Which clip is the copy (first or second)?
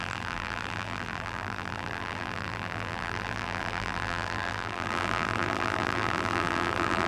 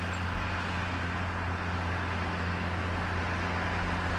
first